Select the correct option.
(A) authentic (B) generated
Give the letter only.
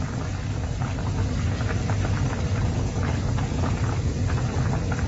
A